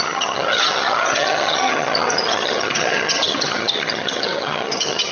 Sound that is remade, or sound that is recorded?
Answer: remade